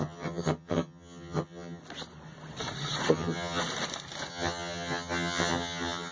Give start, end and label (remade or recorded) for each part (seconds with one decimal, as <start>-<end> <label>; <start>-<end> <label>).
0.0-1.8 remade; 1.8-3.1 recorded; 3.1-3.6 remade; 3.6-4.3 recorded; 4.3-6.1 remade